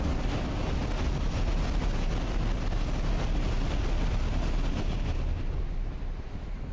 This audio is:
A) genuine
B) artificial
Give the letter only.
A